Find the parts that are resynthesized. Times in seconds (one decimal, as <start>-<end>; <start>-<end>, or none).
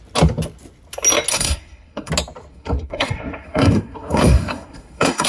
1.3-2.1; 2.5-5.3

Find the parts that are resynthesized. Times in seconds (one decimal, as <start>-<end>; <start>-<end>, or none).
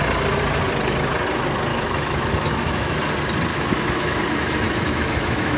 1.7-3.0; 3.5-5.6